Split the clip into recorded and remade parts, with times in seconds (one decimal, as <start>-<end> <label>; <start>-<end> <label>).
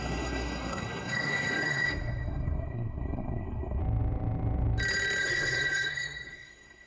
0.0-3.8 remade; 3.8-5.2 recorded; 5.2-6.9 remade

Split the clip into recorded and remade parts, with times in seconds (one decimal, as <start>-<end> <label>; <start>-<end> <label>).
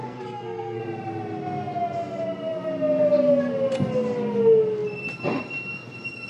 0.0-0.8 remade; 0.8-6.3 recorded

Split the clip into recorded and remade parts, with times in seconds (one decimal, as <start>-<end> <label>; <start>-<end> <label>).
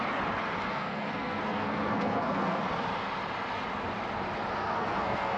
0.0-0.7 recorded; 0.7-2.6 remade; 2.6-4.6 recorded; 4.6-5.4 remade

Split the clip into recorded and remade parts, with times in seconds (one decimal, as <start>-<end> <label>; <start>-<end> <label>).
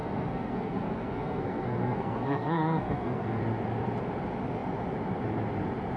0.0-3.4 remade; 3.4-6.0 recorded